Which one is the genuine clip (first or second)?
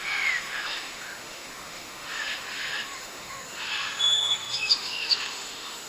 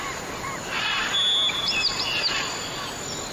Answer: second